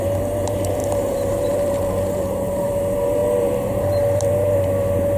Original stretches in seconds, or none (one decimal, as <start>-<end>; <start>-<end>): none